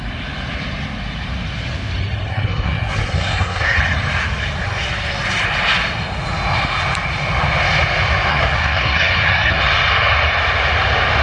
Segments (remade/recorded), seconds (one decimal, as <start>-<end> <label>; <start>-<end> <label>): 0.0-2.3 recorded; 2.3-3.8 remade; 3.8-8.3 recorded; 8.3-9.6 remade; 9.6-11.2 recorded